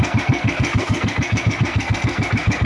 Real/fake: fake